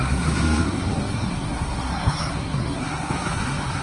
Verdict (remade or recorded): remade